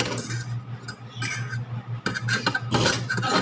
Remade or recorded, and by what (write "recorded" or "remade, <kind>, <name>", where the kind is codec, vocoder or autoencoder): recorded